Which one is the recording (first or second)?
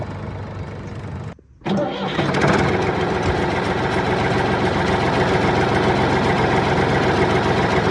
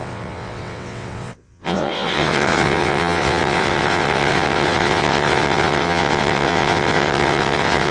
first